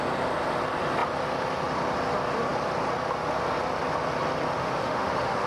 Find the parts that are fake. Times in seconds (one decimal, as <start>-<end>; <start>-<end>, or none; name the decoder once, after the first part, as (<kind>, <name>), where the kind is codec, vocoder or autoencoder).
4.6-5.5 (autoencoder, DAC-VAE)